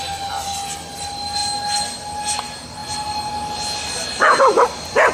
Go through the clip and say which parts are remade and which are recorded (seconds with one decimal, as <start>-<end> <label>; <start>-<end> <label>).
0.0-5.1 recorded

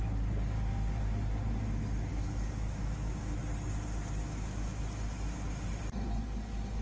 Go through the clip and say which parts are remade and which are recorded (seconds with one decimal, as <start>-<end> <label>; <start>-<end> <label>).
0.0-2.1 recorded; 2.1-3.4 remade; 3.4-4.2 recorded; 4.2-4.8 remade; 4.8-6.8 recorded

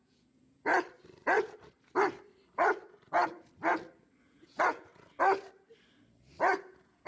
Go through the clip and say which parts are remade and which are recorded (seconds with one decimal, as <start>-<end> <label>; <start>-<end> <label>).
0.0-0.7 remade; 0.7-4.2 recorded; 4.2-4.9 remade; 4.9-6.6 recorded; 6.6-7.1 remade

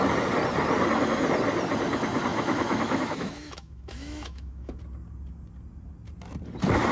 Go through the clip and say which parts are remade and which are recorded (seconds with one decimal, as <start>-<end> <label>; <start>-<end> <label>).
0.0-2.3 recorded; 2.3-4.8 remade; 4.8-6.9 recorded

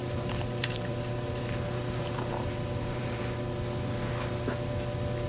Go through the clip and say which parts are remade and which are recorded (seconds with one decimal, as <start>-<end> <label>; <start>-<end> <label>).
0.0-3.2 remade; 3.2-5.3 recorded

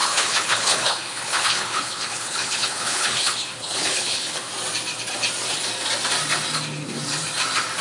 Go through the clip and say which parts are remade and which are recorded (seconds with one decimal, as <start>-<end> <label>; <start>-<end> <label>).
0.0-4.5 remade; 4.5-7.8 recorded